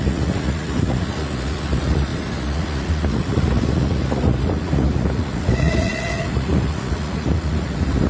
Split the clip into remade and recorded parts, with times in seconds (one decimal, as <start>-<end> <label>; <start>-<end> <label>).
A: 0.0-8.1 remade